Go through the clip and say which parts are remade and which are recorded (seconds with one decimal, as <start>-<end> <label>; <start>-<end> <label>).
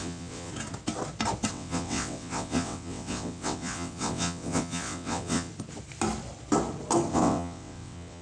0.0-0.5 remade; 0.5-1.5 recorded; 1.5-5.5 remade; 5.5-7.1 recorded; 7.1-8.2 remade